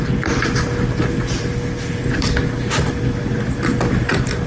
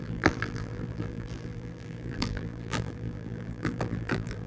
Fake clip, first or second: second